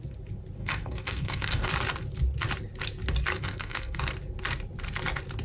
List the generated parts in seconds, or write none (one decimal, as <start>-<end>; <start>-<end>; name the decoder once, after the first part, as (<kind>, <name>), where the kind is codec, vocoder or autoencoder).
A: 0.6-1.7 (codec, SNAC); 3.3-4.0